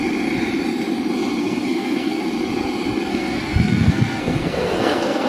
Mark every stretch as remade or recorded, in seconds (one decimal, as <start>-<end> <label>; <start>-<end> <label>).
0.0-1.4 recorded; 1.4-2.2 remade; 2.2-3.1 recorded; 3.1-5.3 remade